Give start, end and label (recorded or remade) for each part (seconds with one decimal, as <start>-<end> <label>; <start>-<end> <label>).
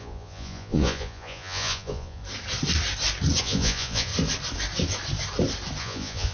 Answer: 0.0-2.2 remade; 2.2-3.4 recorded; 3.4-4.1 remade; 4.1-5.8 recorded; 5.8-6.3 remade